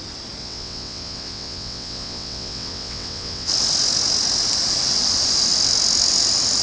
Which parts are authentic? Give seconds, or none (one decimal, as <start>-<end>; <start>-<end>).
0.0-0.4; 3.5-6.6